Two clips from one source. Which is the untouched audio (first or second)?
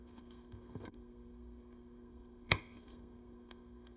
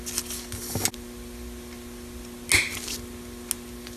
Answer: second